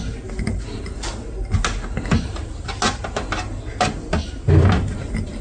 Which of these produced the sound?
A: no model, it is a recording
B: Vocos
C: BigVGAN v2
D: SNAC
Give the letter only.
A